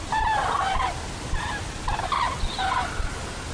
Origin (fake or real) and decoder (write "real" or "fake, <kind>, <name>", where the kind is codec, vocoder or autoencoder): real